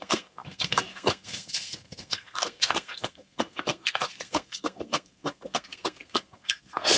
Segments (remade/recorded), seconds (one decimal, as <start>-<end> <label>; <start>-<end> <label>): 0.0-7.0 remade